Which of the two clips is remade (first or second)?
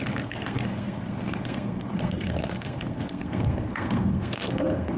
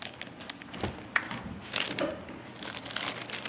first